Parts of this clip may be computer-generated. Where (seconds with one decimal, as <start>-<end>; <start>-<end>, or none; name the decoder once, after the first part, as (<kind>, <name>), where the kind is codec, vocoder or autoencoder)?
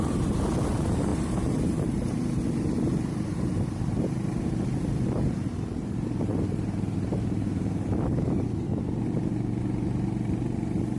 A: 0.0-7.9 (vocoder, BigVGAN v2); 9.6-11.0